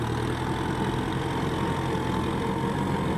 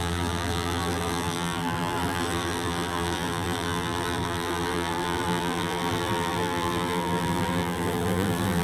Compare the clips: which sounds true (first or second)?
first